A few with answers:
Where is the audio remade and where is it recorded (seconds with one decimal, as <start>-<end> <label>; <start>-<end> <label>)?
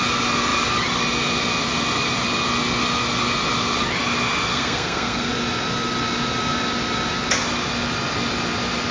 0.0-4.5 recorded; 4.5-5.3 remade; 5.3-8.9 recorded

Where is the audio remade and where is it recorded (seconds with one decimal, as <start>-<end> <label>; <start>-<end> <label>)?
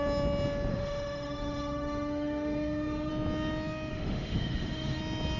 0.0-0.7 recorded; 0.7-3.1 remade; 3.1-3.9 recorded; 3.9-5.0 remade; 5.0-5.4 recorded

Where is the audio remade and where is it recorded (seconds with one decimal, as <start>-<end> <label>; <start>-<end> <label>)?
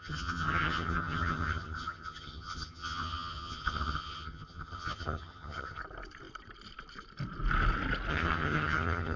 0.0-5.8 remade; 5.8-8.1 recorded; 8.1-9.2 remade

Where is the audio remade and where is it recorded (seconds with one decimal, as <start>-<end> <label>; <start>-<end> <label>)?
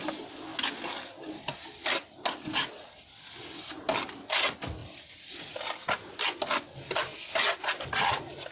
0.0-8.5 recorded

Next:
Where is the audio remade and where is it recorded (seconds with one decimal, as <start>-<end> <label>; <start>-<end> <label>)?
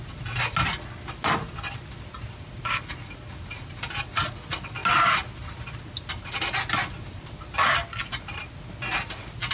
0.0-9.5 recorded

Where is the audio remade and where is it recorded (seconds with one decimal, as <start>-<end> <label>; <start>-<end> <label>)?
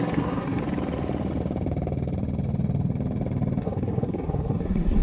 0.0-0.6 remade; 0.6-3.6 recorded; 3.6-5.0 remade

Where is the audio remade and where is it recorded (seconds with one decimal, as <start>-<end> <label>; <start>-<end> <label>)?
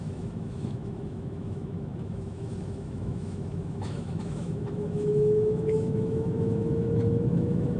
0.0-7.8 remade